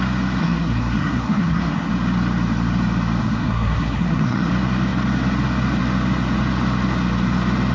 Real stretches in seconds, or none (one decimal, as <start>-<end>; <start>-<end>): 0.0-0.4; 1.9-3.2; 4.5-7.7